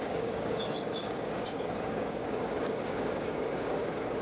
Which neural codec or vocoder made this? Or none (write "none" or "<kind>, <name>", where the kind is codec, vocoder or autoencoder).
codec, DAC